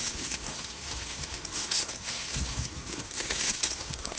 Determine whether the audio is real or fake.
fake